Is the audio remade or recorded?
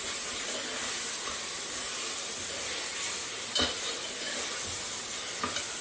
recorded